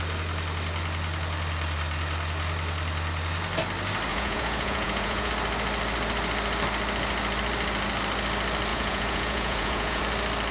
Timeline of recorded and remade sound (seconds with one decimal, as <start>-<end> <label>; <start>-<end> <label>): 0.0-4.1 recorded; 4.1-5.3 remade; 5.3-8.7 recorded; 8.7-10.0 remade; 10.0-10.5 recorded

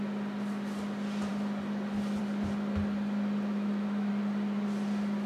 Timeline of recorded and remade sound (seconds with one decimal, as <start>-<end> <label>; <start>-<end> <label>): 0.0-3.5 recorded; 3.5-4.1 remade; 4.1-5.3 recorded

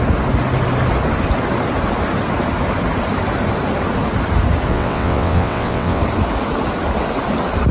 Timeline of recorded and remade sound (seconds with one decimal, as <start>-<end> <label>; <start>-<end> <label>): 0.0-4.7 recorded; 4.7-6.0 remade; 6.0-7.7 recorded